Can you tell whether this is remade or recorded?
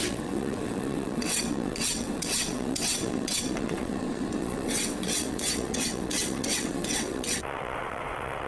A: remade